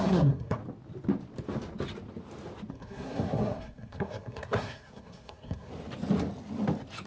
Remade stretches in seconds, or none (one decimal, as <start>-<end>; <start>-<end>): 0.0-0.6; 2.7-5.7